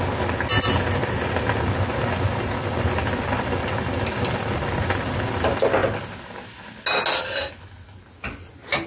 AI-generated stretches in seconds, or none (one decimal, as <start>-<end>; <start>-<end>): none